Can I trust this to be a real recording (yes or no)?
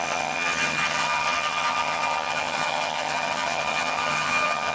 no